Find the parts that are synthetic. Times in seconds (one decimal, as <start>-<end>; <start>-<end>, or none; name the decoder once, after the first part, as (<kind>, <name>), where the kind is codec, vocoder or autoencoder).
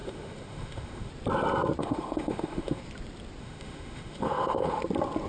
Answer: 0.0-1.1 (autoencoder, DAC-VAE); 1.8-2.8; 3.4-4.8